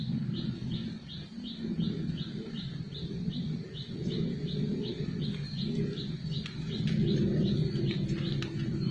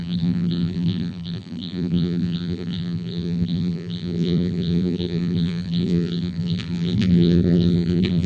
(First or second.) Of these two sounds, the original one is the first